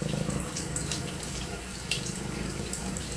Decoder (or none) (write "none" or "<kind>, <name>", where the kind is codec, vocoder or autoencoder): codec, DAC